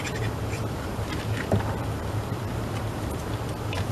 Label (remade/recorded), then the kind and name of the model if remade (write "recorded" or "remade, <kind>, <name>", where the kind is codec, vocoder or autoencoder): recorded